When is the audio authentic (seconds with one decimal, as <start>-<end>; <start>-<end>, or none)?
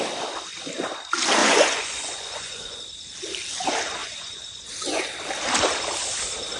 0.0-1.4; 2.8-4.0; 5.1-6.6